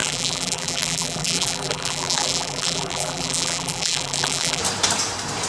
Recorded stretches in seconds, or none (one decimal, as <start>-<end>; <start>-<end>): 4.6-5.5